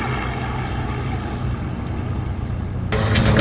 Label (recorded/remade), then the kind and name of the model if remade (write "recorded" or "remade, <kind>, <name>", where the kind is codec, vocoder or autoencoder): recorded